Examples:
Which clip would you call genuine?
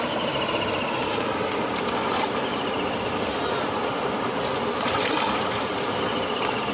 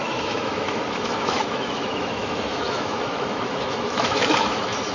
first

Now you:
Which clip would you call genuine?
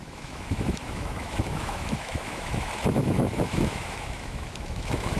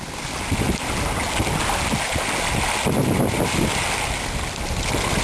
second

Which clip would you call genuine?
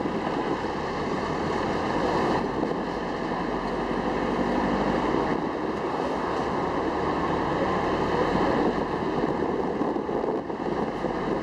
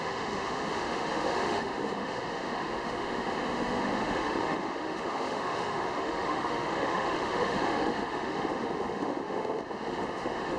first